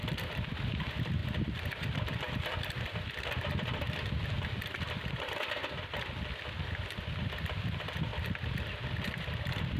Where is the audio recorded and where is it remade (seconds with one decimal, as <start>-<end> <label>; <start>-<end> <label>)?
0.0-5.6 remade; 5.6-7.1 recorded; 7.1-8.1 remade; 8.1-9.3 recorded; 9.3-9.8 remade